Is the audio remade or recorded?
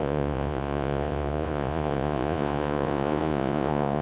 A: remade